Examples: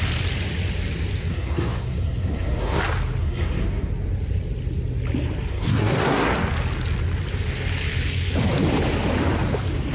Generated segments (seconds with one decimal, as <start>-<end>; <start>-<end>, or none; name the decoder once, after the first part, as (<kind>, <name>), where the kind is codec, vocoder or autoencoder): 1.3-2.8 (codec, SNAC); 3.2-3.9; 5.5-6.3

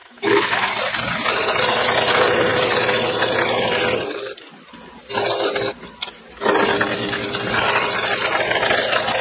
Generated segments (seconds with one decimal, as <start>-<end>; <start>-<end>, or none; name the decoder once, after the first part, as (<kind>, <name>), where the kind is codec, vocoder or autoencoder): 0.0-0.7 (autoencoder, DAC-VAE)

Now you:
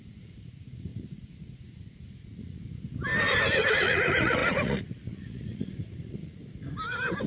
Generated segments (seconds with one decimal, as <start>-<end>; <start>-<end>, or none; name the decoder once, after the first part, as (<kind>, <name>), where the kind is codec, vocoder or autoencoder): 0.0-2.6 (vocoder, Vocos); 3.7-6.4

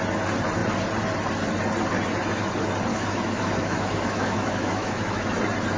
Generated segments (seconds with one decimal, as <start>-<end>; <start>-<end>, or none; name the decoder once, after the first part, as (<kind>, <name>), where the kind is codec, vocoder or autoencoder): 2.9-5.3 (autoencoder, DAC-VAE)